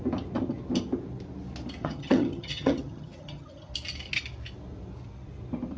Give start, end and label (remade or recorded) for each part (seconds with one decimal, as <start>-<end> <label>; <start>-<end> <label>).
0.0-1.8 recorded; 1.8-3.7 remade; 3.7-5.8 recorded